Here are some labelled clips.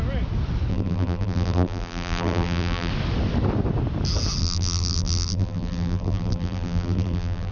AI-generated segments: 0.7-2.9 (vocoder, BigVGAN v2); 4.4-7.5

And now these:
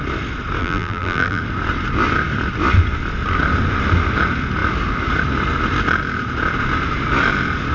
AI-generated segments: 0.6-1.4 (vocoder, BigVGAN v2)

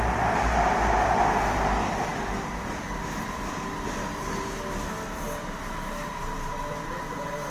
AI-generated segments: none

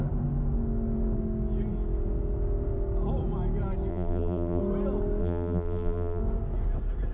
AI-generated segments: 3.9-4.6 (vocoder, BigVGAN v2); 5.2-6.2

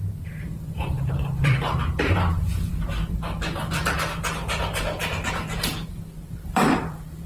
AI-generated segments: 0.0-3.2 (vocoder, BigVGAN v2); 5.3-5.7; 6.5-7.3

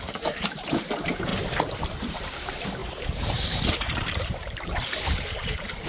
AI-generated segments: 0.0-1.3 (vocoder, BigVGAN v2); 2.1-5.9

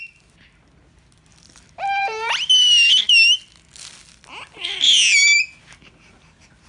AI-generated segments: 1.3-2.5 (vocoder, BigVGAN v2)